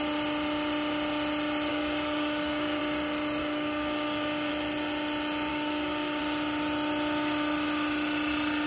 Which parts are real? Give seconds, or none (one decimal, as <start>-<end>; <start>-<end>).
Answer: 0.0-1.7; 2.8-3.4; 4.5-5.5; 6.2-8.7